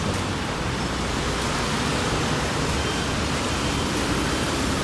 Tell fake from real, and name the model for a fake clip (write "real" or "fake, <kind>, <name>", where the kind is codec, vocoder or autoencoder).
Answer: real